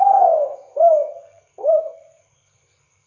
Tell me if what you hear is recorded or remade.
remade